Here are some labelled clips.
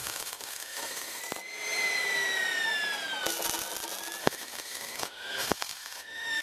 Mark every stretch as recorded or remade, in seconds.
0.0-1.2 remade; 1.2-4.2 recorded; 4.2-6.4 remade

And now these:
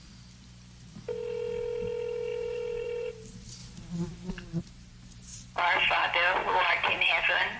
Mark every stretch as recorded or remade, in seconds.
0.0-2.3 recorded; 2.3-3.1 remade; 3.1-3.6 recorded; 3.6-4.3 remade; 4.3-6.4 recorded; 6.4-7.6 remade

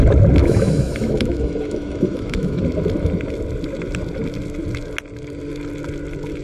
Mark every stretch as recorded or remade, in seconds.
0.0-0.4 recorded; 0.4-2.6 remade; 2.6-6.4 recorded

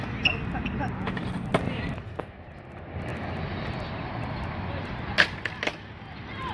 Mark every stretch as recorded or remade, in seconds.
0.0-6.5 recorded

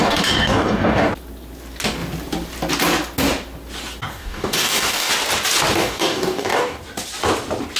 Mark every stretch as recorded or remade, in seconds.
0.0-1.1 remade; 1.1-4.1 recorded; 4.1-5.1 remade; 5.1-5.8 recorded; 5.8-6.8 remade; 6.8-7.8 recorded

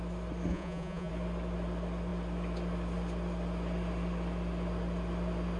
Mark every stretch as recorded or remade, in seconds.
0.0-0.5 recorded; 0.5-1.1 remade; 1.1-5.6 recorded